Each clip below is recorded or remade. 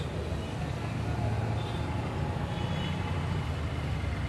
recorded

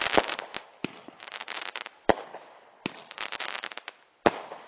recorded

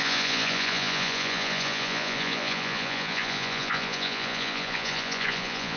remade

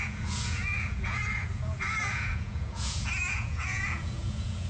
remade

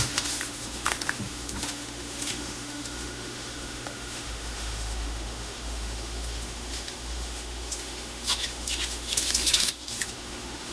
remade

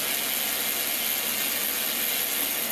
recorded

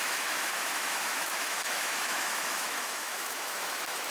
remade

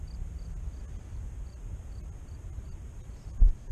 recorded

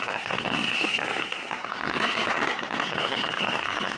remade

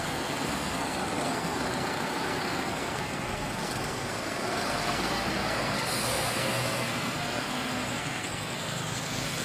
remade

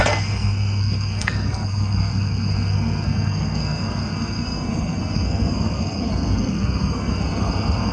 remade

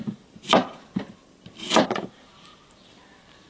remade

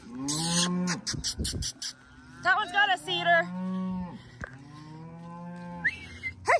recorded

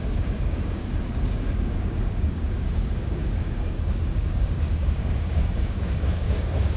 remade